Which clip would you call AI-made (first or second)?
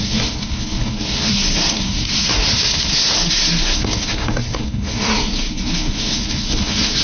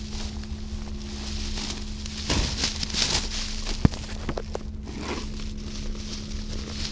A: first